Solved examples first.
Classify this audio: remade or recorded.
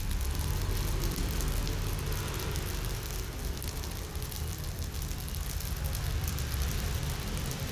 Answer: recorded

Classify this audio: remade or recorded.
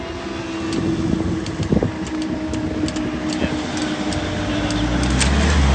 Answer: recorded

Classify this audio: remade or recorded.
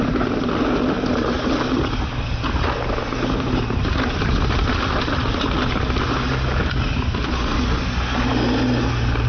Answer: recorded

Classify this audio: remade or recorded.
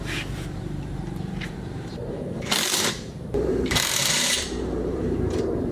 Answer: remade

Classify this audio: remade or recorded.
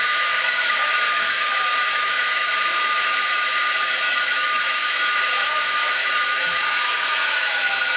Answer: remade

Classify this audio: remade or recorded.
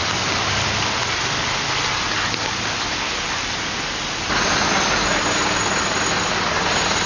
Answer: recorded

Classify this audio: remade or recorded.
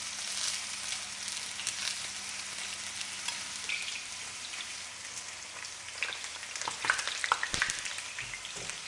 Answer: recorded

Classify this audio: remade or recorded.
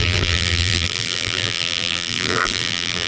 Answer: remade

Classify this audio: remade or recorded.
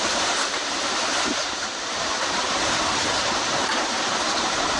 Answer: remade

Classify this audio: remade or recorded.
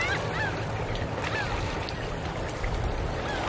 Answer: recorded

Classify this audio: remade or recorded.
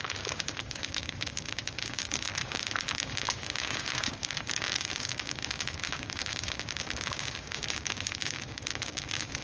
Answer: remade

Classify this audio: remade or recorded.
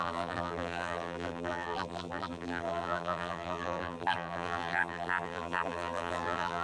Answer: remade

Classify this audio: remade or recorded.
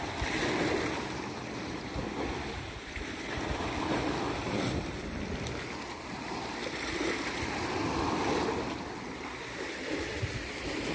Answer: recorded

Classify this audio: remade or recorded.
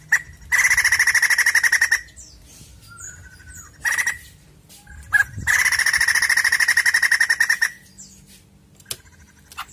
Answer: recorded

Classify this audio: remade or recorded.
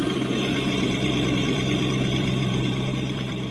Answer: remade